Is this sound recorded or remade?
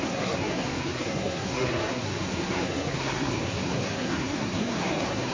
remade